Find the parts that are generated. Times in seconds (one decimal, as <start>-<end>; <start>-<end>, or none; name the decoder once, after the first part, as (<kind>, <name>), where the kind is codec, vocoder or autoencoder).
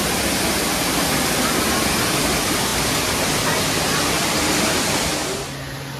none